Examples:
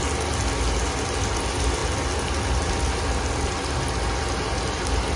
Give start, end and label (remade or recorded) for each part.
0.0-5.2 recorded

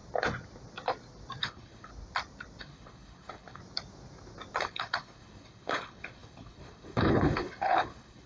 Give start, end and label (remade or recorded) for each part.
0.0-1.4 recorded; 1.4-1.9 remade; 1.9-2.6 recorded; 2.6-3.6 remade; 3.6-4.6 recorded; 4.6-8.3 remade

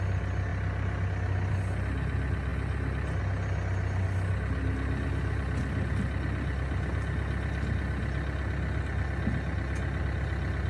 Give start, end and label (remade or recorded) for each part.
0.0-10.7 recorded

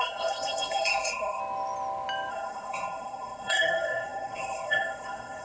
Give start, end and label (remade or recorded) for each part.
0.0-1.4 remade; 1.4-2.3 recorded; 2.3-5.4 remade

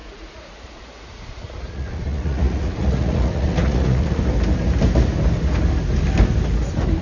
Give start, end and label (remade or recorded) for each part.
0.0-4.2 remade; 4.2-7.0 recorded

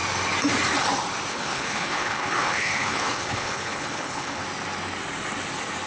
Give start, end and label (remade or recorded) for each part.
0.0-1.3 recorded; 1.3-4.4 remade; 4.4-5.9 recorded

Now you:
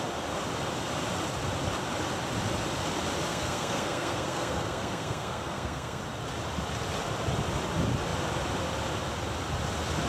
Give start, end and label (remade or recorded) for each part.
0.0-3.3 recorded; 3.3-6.0 remade; 6.0-10.1 recorded

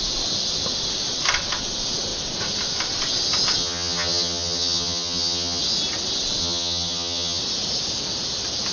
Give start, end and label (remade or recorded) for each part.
0.0-3.6 recorded; 3.6-5.6 remade; 5.6-6.4 recorded; 6.4-7.4 remade; 7.4-8.7 recorded